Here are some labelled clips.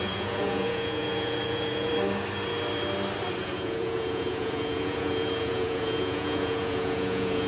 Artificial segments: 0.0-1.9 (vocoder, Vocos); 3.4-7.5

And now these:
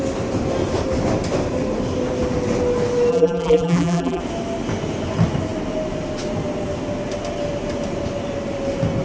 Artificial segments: 3.1-4.2 (vocoder, BigVGAN v2)

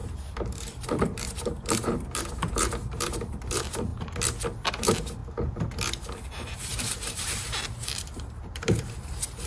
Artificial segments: 0.0-3.9 (vocoder, BigVGAN v2); 4.7-5.2; 6.3-9.5

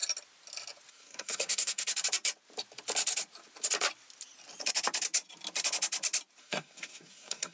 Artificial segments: 0.9-1.9 (codec, SNAC); 6.4-7.5